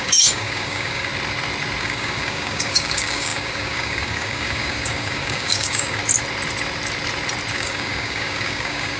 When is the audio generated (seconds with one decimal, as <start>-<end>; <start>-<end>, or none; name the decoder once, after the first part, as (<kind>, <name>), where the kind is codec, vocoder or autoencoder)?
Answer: 0.0-1.1 (codec, DAC); 1.8-6.0; 7.5-9.0